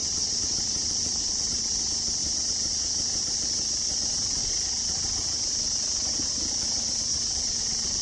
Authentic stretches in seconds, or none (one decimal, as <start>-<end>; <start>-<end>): 1.6-4.4; 6.3-7.1; 7.6-8.0